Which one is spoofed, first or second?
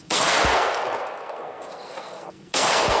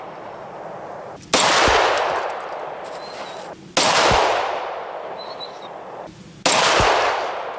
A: first